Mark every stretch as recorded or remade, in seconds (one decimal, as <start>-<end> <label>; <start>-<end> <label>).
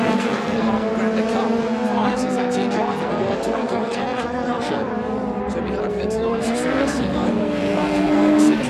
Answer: 0.0-0.9 remade; 0.9-1.6 recorded; 1.6-4.9 remade; 4.9-5.8 recorded; 5.8-8.7 remade